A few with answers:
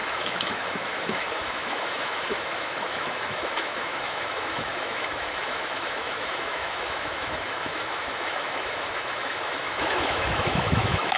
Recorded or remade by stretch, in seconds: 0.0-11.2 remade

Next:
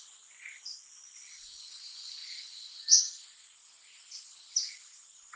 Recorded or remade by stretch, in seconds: 0.0-5.4 recorded

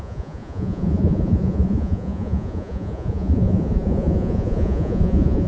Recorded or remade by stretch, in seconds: 0.0-5.5 remade

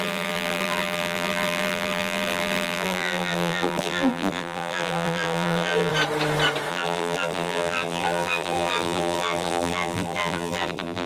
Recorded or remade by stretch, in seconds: 0.0-5.9 remade; 5.9-6.7 recorded; 6.7-11.1 remade

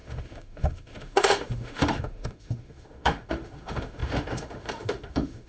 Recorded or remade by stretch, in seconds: 0.0-5.5 remade

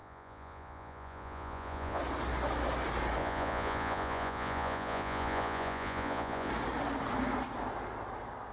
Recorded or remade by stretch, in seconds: 0.0-2.0 remade; 2.0-3.2 recorded; 3.2-6.5 remade; 6.5-8.5 recorded

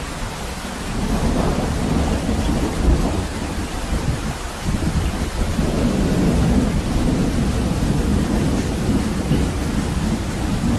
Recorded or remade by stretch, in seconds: 0.0-10.8 recorded